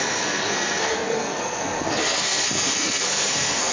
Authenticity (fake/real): fake